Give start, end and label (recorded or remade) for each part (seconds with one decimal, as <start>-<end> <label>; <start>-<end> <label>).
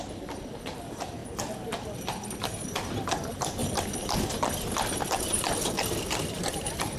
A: 0.0-3.6 remade; 3.6-6.2 recorded; 6.2-7.0 remade